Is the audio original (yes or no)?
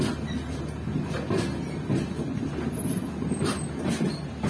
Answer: yes